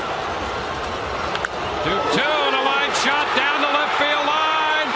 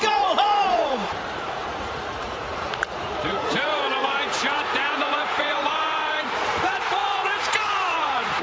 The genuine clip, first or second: first